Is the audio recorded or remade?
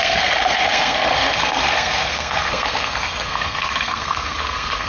remade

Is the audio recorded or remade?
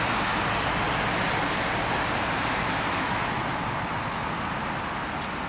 recorded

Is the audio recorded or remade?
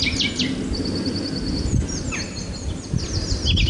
recorded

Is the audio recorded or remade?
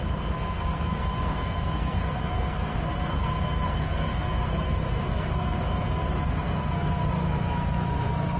remade